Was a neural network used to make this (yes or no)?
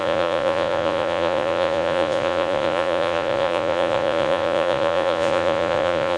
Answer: yes